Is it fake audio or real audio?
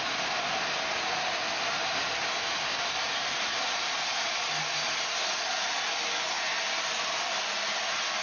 real